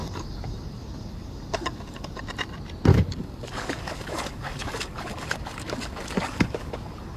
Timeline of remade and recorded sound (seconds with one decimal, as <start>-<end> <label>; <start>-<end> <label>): 0.0-2.2 remade; 2.2-2.9 recorded; 2.9-7.2 remade